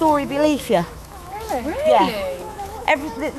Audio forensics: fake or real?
fake